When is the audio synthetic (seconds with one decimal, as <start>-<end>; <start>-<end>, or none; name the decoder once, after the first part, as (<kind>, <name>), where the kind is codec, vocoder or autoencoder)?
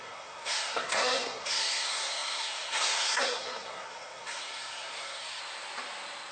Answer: 0.0-5.4 (codec, SNAC)